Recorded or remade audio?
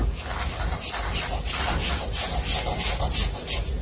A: recorded